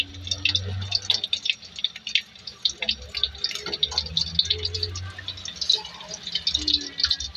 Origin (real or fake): real